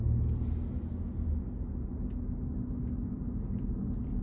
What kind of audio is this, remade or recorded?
recorded